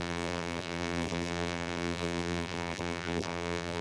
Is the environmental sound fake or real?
fake